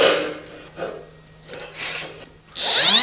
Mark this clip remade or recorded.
recorded